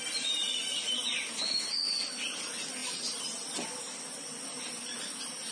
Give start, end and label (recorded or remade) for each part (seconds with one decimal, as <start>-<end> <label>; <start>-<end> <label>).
0.0-5.5 recorded